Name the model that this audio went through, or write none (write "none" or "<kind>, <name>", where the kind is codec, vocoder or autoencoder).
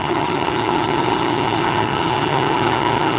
vocoder, HiFi-GAN